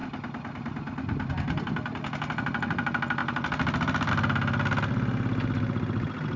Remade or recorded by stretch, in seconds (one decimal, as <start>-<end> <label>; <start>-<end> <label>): 0.0-6.4 recorded